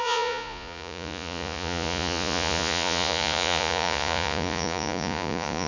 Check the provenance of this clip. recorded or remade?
remade